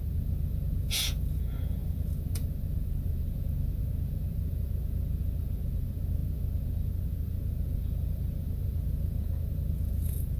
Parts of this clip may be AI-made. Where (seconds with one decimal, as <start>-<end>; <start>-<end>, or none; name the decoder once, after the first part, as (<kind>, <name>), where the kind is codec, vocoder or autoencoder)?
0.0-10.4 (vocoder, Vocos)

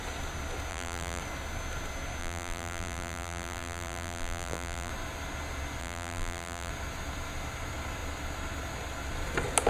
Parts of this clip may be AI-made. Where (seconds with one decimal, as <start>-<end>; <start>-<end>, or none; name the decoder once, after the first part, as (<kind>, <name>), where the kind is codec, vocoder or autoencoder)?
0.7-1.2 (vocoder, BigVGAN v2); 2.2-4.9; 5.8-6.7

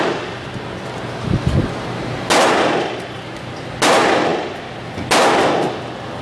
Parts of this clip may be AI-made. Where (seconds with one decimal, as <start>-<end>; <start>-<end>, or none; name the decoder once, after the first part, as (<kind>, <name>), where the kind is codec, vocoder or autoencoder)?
none